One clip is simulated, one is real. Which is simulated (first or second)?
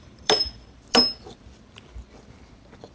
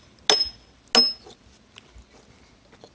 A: first